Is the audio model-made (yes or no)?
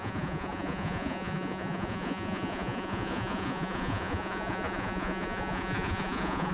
yes